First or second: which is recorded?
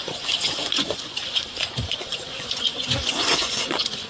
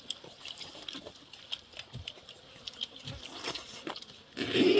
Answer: second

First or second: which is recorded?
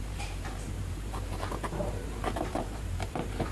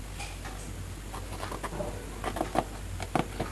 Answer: second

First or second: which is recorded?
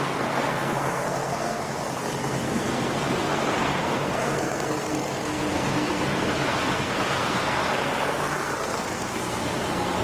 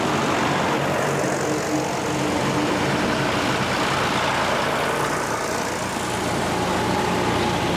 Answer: second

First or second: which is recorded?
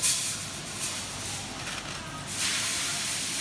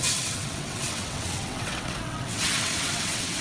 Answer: first